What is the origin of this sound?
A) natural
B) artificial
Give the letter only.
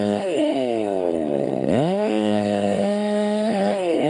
B